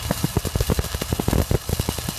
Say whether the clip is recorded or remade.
recorded